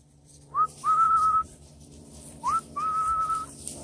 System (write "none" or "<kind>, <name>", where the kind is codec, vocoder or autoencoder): vocoder, BigVGAN v2